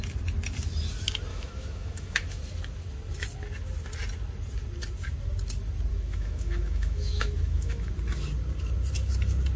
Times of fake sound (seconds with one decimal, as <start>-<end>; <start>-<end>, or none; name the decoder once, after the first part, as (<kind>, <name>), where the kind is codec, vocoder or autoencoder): 1.3-2.4 (autoencoder, DAC-VAE); 5.9-7.9